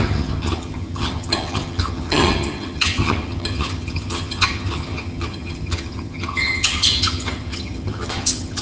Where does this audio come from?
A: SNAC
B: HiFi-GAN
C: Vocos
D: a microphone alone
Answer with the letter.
B